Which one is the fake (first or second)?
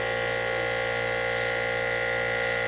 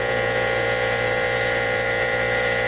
second